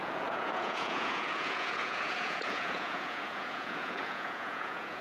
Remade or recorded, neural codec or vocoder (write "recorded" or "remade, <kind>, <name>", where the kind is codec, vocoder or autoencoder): remade, vocoder, Vocos